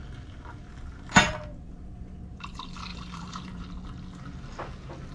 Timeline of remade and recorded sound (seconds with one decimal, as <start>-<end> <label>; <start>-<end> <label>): 0.0-2.9 recorded; 2.9-3.6 remade; 3.6-5.1 recorded